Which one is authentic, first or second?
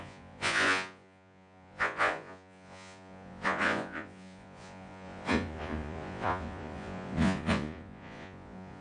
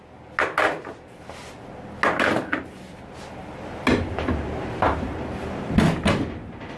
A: second